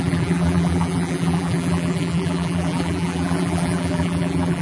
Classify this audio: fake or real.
fake